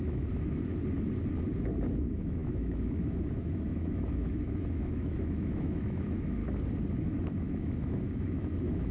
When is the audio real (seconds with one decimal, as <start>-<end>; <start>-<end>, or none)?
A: 0.7-2.0; 6.4-7.0